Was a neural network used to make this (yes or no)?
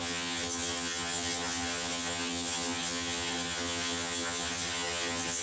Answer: yes